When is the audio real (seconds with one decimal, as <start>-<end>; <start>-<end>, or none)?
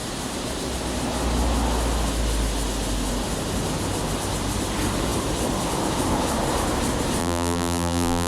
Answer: 0.0-7.2